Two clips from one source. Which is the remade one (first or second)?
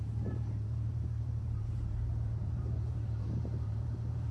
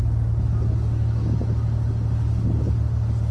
first